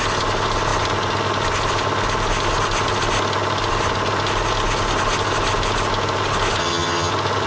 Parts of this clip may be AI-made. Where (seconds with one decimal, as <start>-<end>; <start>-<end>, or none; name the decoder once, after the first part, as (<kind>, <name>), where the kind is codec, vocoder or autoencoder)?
6.6-7.1 (vocoder, HiFi-GAN)

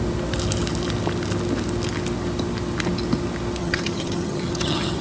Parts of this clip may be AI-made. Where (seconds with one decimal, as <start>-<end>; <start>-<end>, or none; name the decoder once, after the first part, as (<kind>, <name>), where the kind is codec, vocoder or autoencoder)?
3.6-5.0 (vocoder, HiFi-GAN)

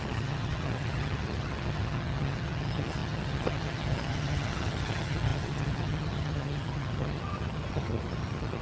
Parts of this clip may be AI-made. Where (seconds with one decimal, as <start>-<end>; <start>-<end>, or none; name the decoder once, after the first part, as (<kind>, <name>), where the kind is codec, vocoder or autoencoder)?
0.0-8.6 (vocoder, HiFi-GAN)

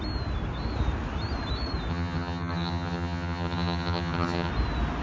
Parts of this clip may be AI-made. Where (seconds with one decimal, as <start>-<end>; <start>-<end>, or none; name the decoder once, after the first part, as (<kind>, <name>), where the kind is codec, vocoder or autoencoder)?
1.9-4.5 (vocoder, HiFi-GAN)

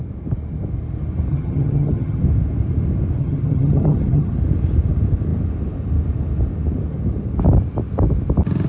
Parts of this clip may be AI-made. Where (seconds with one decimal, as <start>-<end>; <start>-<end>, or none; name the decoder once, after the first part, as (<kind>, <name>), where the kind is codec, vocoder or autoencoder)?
1.3-2.2 (vocoder, HiFi-GAN); 3.2-4.3

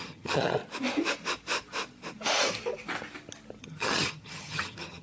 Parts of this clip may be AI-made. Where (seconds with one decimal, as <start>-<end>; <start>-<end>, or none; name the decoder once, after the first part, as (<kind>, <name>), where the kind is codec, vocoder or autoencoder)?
0.0-0.6 (vocoder, HiFi-GAN); 3.6-5.0

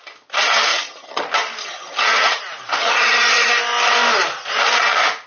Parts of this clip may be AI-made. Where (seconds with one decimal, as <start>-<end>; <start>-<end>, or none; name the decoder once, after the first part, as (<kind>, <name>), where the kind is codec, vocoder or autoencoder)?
0.7-1.2 (vocoder, HiFi-GAN); 1.6-2.4; 2.8-3.5